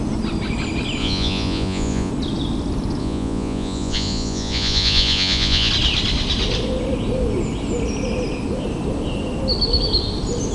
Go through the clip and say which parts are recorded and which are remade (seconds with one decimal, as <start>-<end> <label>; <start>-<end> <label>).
0.0-1.0 recorded; 1.0-2.1 remade; 2.1-3.0 recorded; 3.0-5.7 remade; 5.7-10.5 recorded